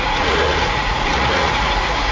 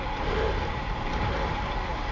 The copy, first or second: first